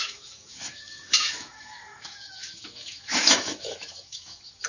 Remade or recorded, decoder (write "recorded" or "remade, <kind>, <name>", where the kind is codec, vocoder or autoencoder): remade, autoencoder, DAC-VAE